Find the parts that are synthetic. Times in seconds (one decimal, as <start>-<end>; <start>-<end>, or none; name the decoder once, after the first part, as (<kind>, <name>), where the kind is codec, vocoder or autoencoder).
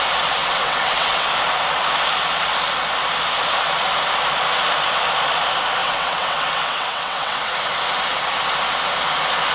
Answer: 0.4-1.3 (vocoder, WaveNeXt); 5.8-7.5